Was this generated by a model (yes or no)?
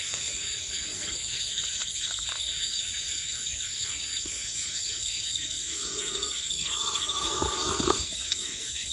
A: yes